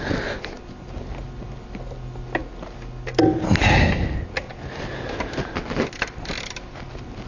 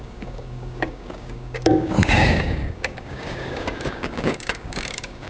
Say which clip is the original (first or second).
first